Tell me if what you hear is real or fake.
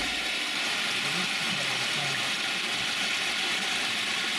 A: real